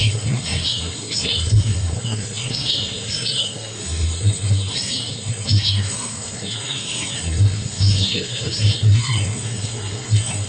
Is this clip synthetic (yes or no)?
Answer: yes